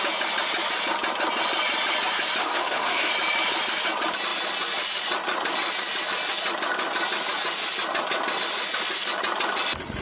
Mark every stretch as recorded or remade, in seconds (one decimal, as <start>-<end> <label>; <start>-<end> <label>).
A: 0.0-2.4 recorded; 2.4-3.1 remade; 3.1-10.0 recorded